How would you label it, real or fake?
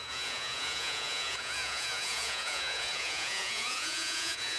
fake